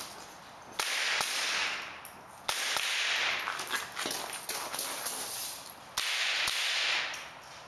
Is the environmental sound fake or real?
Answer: real